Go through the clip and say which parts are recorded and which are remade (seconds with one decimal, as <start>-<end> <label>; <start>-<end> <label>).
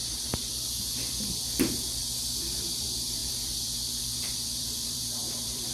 0.0-2.4 recorded; 2.4-5.7 remade